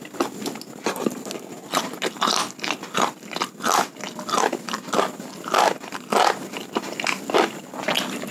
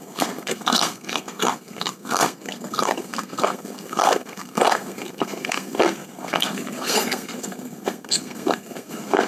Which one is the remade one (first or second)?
second